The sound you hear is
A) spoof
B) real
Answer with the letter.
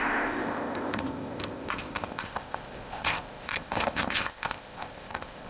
A